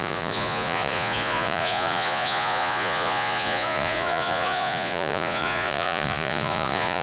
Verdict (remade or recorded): remade